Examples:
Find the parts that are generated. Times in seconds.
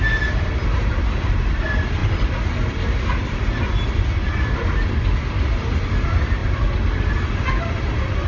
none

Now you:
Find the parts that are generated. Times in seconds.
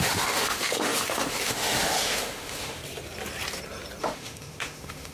0.0-2.8 (autoencoder, DAC-VAE); 4.0-5.1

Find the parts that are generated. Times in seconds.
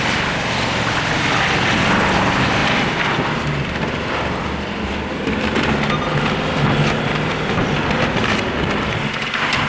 none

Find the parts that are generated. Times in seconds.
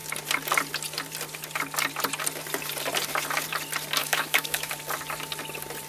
4.0-4.7 (autoencoder, DAC-VAE)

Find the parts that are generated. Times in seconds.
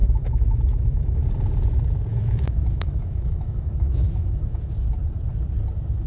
0.0-1.2 (autoencoder, DAC-VAE); 2.1-4.7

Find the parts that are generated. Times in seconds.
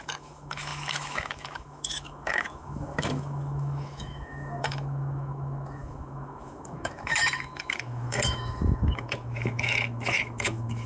0.0-10.9 (autoencoder, DAC-VAE)